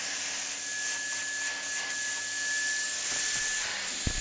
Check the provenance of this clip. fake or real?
real